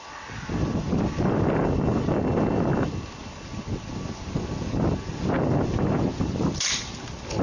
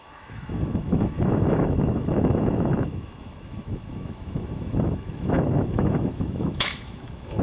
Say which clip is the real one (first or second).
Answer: first